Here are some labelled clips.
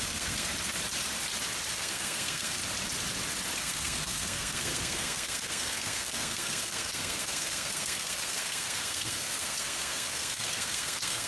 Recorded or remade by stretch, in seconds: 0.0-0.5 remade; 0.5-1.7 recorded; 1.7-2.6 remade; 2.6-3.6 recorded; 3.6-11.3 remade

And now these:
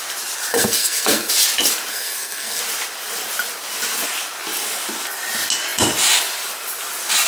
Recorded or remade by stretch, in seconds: 0.0-0.5 recorded; 0.5-1.3 remade; 1.3-1.9 recorded; 1.9-2.6 remade; 2.6-7.3 recorded

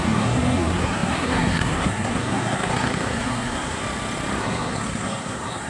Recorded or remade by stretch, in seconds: 0.0-3.8 remade; 3.8-4.4 recorded; 4.4-5.7 remade

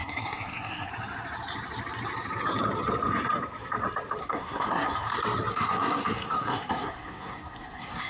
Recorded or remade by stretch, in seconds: 0.0-0.9 remade; 0.9-4.2 recorded; 4.2-5.1 remade; 5.1-5.5 recorded; 5.5-8.1 remade

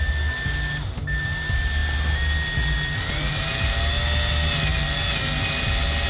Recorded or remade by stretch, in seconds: 0.0-6.1 recorded

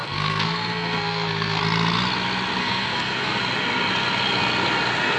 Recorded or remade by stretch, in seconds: 0.0-1.6 remade; 1.6-2.6 recorded; 2.6-3.4 remade; 3.4-5.2 recorded

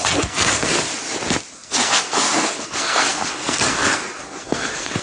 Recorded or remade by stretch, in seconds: 0.0-0.7 remade; 0.7-1.5 recorded; 1.5-5.0 remade